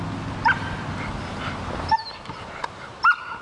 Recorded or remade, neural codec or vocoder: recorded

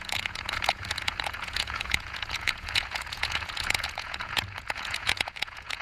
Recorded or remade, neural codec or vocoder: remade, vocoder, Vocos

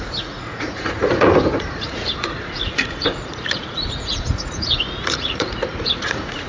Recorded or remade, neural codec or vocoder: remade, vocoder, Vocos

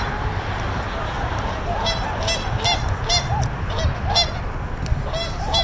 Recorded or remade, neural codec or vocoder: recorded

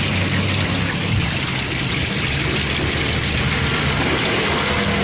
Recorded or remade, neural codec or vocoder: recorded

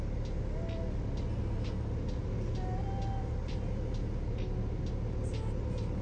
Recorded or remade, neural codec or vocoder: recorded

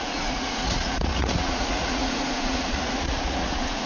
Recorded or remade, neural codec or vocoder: remade, vocoder, Vocos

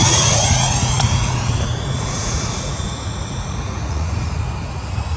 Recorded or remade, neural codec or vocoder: remade, vocoder, Vocos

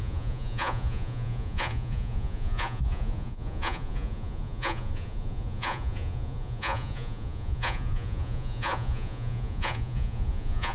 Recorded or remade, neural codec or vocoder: remade, vocoder, Vocos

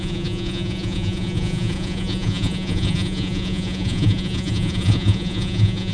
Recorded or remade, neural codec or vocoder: remade, vocoder, Vocos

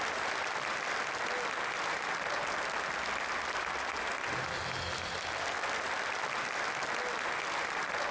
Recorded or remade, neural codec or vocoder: recorded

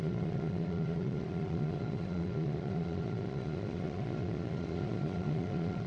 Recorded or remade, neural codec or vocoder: remade, vocoder, Vocos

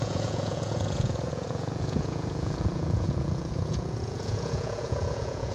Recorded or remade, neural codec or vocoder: remade, vocoder, Vocos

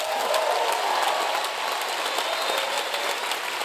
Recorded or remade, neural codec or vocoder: recorded